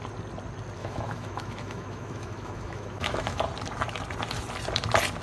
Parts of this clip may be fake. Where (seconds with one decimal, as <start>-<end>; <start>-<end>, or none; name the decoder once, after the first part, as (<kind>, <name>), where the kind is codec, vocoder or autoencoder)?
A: 0.8-3.4 (autoencoder, DAC-VAE)